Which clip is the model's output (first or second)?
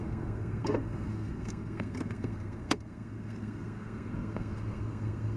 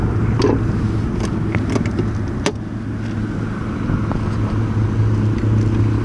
first